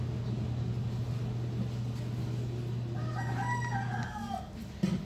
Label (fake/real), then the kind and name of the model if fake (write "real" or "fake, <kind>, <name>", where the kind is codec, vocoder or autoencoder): real